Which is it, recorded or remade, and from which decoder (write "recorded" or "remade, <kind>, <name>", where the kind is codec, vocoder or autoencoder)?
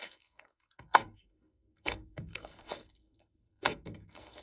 remade, codec, SNAC